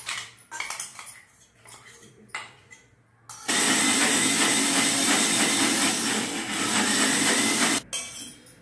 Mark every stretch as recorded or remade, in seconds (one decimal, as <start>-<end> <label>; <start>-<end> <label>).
0.0-8.6 recorded